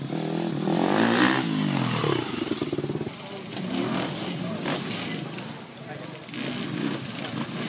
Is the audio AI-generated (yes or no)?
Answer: no